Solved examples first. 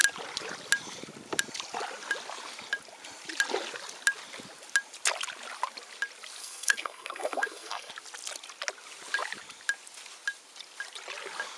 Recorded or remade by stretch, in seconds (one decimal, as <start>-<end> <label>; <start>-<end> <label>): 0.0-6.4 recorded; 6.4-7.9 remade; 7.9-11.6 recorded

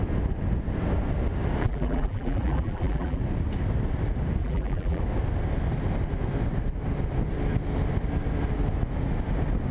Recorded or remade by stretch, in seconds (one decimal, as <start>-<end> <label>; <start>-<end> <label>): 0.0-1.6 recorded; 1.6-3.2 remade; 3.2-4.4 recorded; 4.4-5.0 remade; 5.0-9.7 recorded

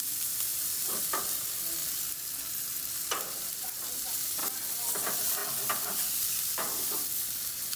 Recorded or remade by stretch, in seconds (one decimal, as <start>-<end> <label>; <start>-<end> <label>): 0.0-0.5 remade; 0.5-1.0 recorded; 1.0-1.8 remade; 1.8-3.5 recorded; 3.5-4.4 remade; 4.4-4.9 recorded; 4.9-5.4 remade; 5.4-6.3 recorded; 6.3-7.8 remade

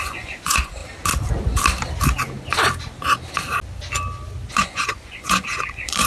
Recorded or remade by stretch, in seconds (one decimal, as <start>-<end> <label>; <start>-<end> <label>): 0.0-0.8 remade; 0.8-4.5 recorded; 4.5-6.1 remade

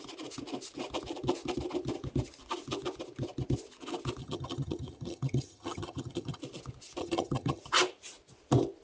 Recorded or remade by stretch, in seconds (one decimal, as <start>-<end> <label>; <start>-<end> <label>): 0.0-4.2 recorded; 4.2-6.4 remade; 6.4-7.0 recorded; 7.0-7.6 remade; 7.6-8.8 recorded

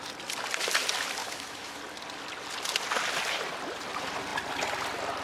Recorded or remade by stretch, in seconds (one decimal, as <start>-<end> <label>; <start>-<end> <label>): 0.0-1.2 recorded; 1.2-1.8 remade; 1.8-5.2 recorded

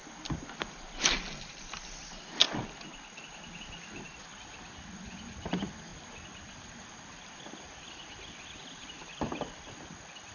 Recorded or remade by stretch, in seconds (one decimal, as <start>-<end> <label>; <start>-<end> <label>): 0.0-1.5 recorded; 1.5-2.0 remade; 2.0-5.5 recorded; 5.5-5.9 remade; 5.9-6.5 recorded; 6.5-10.3 remade